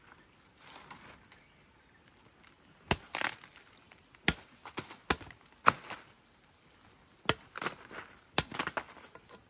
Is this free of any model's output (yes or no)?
yes